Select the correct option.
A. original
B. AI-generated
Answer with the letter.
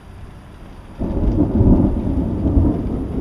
A